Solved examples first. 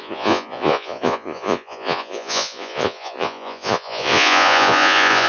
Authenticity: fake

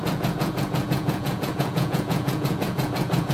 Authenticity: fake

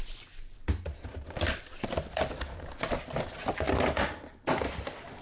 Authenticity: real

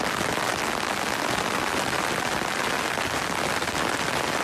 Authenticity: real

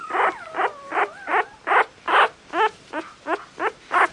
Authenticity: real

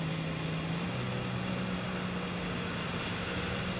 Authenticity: real